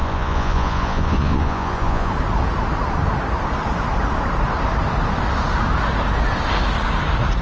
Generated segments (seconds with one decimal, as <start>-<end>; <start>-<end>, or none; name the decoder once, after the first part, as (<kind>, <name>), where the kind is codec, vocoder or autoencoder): 0.0-2.1 (vocoder, Vocos)